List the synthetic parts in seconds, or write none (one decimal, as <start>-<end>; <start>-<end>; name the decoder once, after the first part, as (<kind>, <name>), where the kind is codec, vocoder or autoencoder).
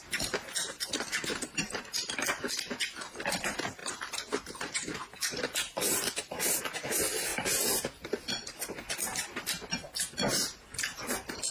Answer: 0.6-1.9 (vocoder, BigVGAN v2); 3.8-6.6